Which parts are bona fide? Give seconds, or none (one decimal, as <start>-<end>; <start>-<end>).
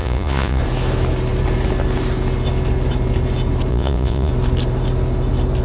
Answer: 0.6-3.7; 4.3-5.6